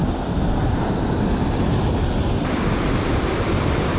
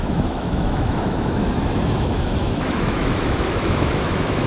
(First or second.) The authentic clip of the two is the first